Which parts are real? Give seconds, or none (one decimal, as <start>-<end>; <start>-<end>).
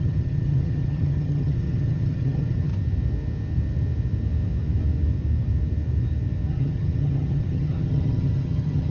2.7-6.5